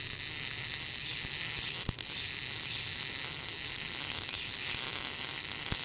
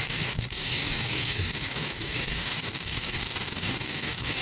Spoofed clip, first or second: second